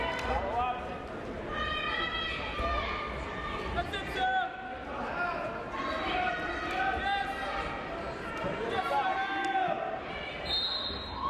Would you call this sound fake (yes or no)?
no